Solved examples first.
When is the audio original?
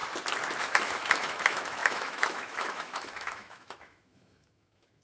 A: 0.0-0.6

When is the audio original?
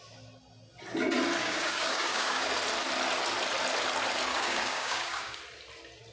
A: 0.0-1.4; 2.5-4.3; 5.4-6.1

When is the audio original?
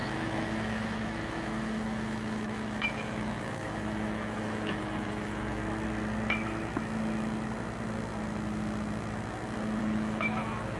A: 5.6-9.8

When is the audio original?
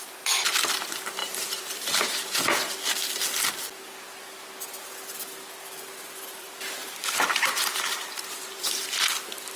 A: 0.0-1.2; 2.7-7.0; 8.8-9.6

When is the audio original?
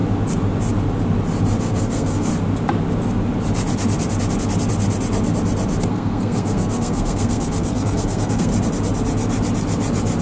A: 0.0-1.6; 2.3-5.9; 8.5-10.2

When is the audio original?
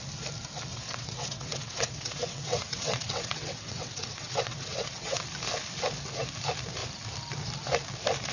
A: 0.0-0.7; 5.2-8.3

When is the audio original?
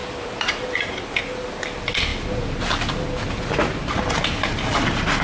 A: 0.0-5.2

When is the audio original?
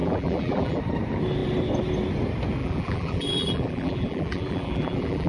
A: 0.8-2.6